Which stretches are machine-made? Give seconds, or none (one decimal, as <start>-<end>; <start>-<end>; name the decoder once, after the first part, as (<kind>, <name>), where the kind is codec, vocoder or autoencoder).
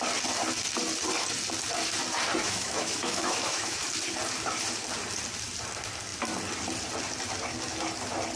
2.4-3.9 (autoencoder, DAC-VAE)